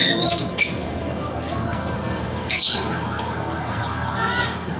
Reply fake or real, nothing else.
fake